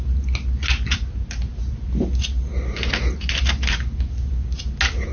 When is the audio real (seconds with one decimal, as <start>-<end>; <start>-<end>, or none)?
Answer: 0.0-5.1